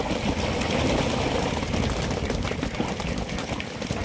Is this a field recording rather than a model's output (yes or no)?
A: yes